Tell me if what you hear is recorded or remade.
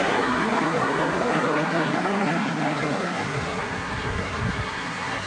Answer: remade